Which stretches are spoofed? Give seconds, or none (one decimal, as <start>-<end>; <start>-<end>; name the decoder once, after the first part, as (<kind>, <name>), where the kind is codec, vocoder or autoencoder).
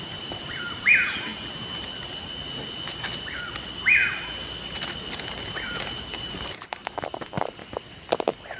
0.0-1.3 (vocoder, BigVGAN v2); 5.1-7.6; 8.2-8.6